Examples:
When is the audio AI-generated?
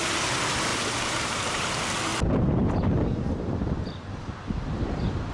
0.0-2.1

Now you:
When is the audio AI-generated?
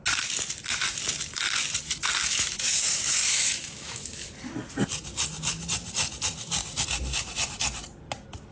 2.2-4.3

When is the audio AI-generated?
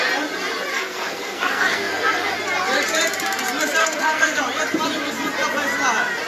0.7-2.3; 3.8-4.4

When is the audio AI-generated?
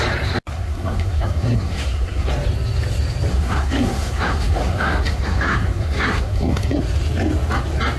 0.5-2.3; 3.3-6.8